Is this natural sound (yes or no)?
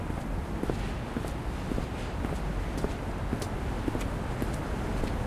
yes